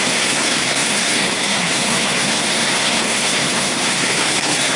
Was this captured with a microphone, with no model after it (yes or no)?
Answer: no